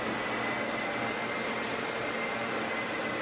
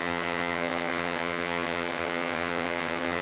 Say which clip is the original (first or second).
first